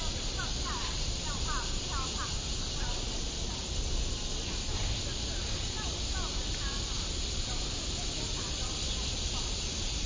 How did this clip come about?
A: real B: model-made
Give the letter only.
B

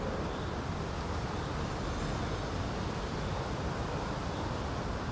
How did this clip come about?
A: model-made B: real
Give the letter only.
B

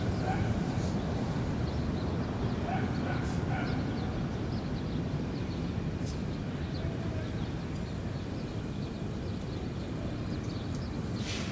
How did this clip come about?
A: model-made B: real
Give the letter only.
B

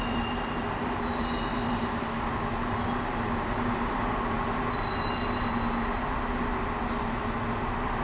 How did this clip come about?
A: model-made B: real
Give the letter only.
B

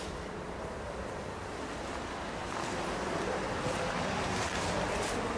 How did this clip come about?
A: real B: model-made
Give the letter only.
A